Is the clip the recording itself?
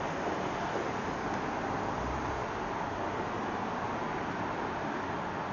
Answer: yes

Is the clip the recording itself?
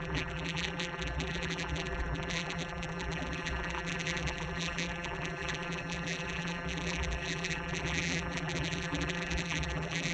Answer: no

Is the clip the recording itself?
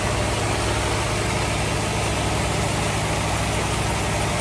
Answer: yes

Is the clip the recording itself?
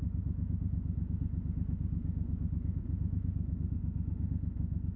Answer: no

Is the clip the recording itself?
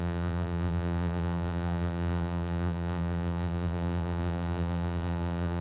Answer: no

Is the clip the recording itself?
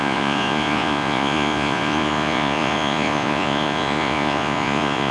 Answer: no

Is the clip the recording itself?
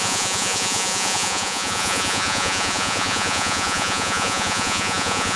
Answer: no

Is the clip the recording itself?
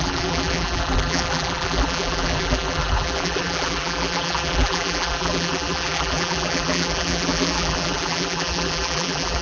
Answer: no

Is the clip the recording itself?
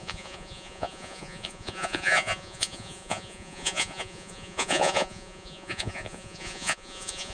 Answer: no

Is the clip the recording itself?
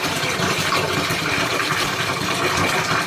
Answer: no